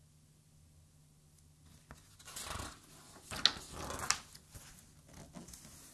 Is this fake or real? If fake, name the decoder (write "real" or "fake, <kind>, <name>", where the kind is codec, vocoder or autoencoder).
real